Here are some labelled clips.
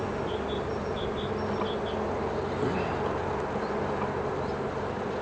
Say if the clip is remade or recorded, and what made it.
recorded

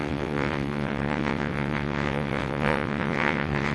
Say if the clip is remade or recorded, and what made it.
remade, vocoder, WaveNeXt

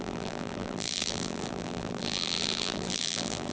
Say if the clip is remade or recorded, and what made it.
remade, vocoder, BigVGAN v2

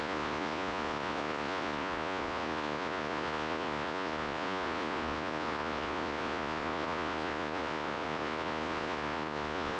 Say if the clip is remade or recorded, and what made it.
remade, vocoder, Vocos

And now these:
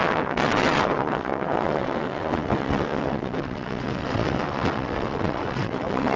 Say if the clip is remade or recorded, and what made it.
remade, vocoder, WaveNeXt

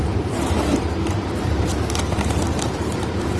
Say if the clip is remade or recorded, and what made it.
remade, vocoder, BigVGAN v2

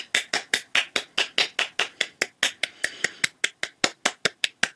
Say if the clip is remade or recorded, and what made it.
recorded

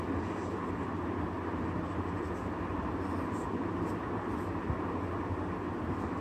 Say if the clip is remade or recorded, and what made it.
recorded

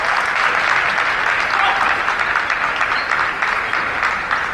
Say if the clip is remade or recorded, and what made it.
recorded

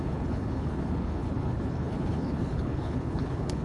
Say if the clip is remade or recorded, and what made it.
remade, codec, HILCodec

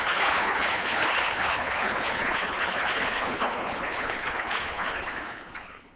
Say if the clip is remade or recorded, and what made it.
remade, codec, HILCodec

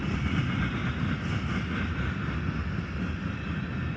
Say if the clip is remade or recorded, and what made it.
recorded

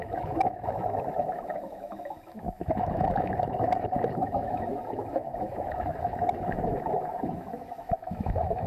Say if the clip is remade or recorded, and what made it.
remade, autoencoder, DAC-VAE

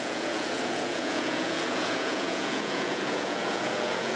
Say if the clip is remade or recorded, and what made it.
remade, vocoder, Vocos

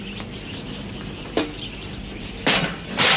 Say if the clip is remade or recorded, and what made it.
recorded